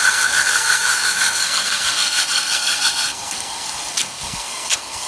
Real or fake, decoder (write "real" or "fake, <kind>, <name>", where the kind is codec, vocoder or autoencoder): fake, codec, SNAC